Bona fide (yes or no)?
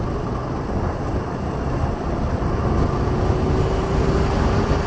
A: yes